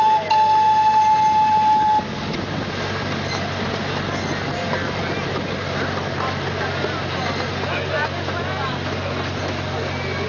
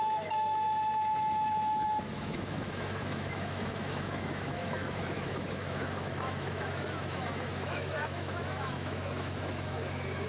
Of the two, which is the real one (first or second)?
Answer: first